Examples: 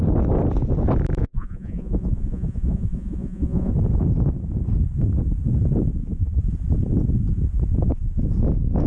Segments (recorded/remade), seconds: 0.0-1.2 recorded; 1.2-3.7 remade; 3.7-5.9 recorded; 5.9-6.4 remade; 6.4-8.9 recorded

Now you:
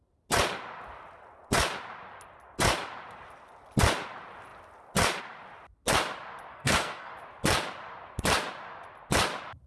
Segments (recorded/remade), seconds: 0.0-6.5 recorded; 6.5-7.1 remade; 7.1-9.7 recorded